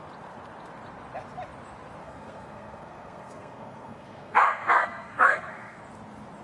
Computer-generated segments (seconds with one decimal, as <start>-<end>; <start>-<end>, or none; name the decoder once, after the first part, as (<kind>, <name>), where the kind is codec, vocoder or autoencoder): 2.0-5.8 (codec, SNAC)